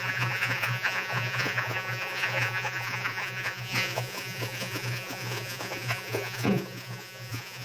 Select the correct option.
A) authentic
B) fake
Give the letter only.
B